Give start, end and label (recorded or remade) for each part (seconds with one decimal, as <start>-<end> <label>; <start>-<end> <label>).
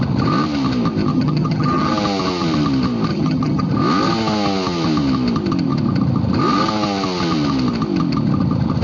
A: 0.0-1.1 recorded; 1.1-1.9 remade; 1.9-3.1 recorded; 3.1-3.7 remade; 3.7-8.8 recorded